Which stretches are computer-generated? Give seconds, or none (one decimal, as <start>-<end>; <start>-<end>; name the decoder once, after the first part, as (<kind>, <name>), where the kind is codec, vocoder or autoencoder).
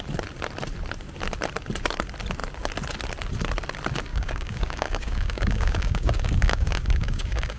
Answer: 4.1-7.6 (codec, DAC)